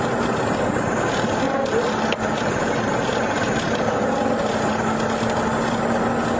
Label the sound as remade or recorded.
recorded